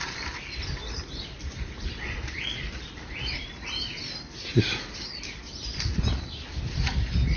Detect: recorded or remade remade